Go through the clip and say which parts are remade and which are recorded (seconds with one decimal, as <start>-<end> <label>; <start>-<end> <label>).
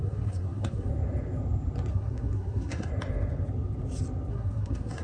0.0-0.9 remade; 0.9-1.9 recorded; 1.9-2.9 remade; 2.9-4.3 recorded; 4.3-5.0 remade